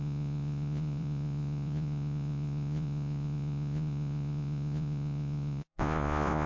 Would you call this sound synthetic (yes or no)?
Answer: yes